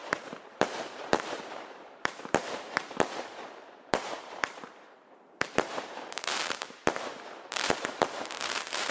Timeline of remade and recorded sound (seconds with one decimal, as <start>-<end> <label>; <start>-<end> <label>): 0.0-8.9 remade